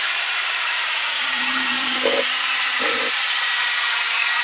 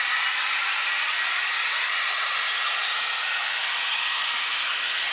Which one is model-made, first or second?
first